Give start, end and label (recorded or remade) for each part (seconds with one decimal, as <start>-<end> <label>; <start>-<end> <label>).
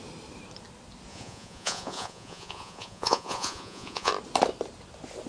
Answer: 0.0-1.1 recorded; 1.1-4.1 remade; 4.1-5.3 recorded